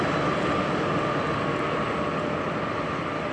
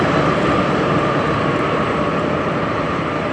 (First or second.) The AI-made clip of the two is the second